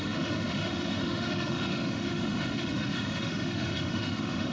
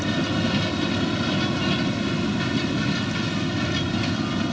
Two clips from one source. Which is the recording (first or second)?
second